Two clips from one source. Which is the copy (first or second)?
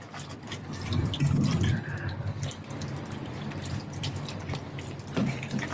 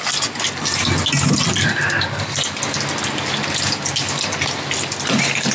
first